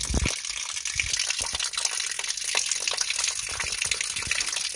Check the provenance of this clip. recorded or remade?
recorded